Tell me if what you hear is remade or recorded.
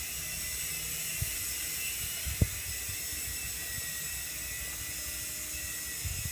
recorded